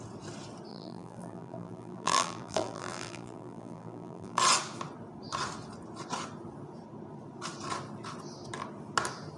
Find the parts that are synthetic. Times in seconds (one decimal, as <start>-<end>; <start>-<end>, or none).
0.7-4.4